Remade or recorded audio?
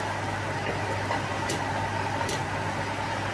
recorded